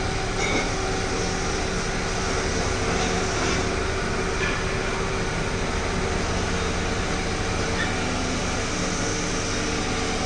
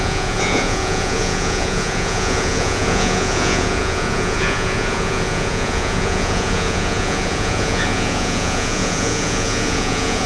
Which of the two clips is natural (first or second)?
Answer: first